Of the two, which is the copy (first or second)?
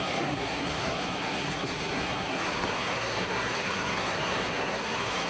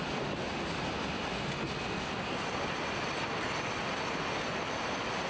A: first